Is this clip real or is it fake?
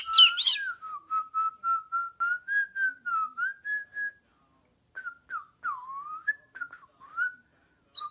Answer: real